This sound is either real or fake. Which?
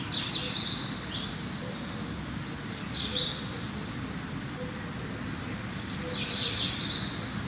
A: real